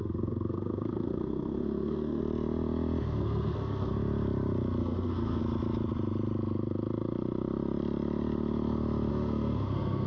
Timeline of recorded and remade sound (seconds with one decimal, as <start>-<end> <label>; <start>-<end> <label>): 0.0-2.2 remade; 2.2-3.0 recorded; 3.0-3.9 remade; 3.9-4.8 recorded; 4.8-5.4 remade; 5.4-9.1 recorded; 9.1-10.1 remade